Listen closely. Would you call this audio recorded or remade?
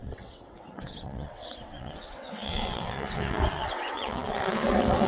remade